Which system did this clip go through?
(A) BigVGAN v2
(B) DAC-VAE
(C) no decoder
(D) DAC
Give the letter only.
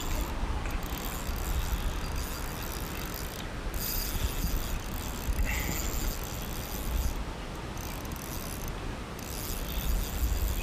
C